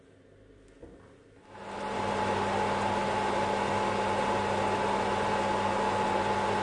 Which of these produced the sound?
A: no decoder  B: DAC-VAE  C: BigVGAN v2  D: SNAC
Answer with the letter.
A